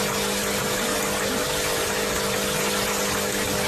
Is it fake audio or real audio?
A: real